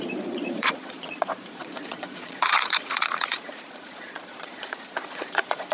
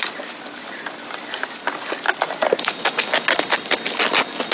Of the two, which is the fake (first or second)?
first